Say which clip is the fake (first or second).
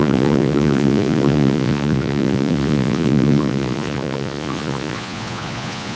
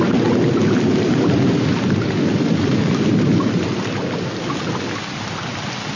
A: first